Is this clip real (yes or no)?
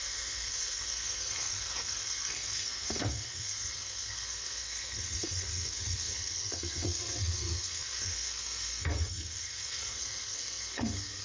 no